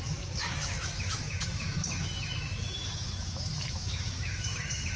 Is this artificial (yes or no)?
yes